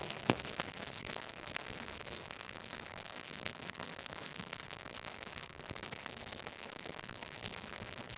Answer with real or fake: fake